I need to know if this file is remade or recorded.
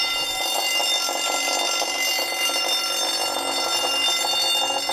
recorded